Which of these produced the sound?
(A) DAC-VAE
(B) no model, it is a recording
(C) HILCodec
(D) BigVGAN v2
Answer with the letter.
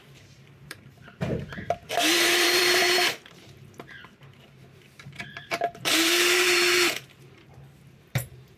D